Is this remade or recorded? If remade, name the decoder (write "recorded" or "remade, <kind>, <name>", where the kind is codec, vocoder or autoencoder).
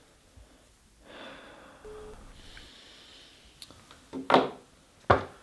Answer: recorded